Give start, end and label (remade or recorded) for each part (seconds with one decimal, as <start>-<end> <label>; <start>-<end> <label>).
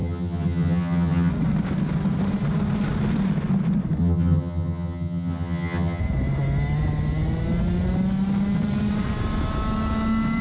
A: 0.0-1.3 remade; 1.3-4.0 recorded; 4.0-6.0 remade; 6.0-10.4 recorded